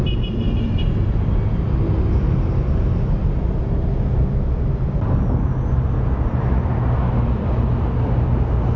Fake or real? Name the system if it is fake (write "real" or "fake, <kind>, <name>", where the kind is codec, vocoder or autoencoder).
real